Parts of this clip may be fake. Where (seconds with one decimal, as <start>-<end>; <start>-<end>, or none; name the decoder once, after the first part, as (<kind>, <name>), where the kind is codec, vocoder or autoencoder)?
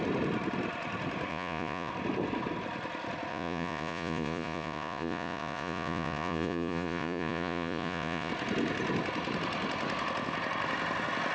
1.3-1.9 (vocoder, Vocos); 3.3-8.3